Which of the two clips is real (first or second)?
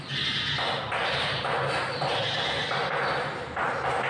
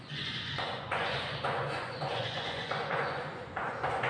first